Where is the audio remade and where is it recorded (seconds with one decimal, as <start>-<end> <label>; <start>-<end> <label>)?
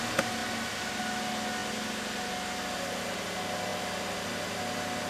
0.0-5.1 recorded